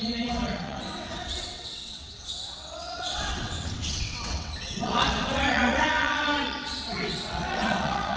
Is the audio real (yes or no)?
no